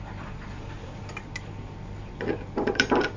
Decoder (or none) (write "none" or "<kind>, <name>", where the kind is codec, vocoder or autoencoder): vocoder, BigVGAN v2